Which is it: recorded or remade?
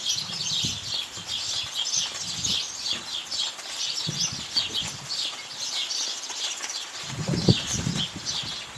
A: recorded